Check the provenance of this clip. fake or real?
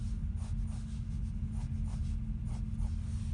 real